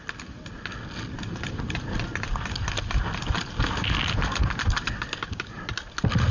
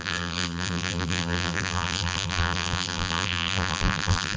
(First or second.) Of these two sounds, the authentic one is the first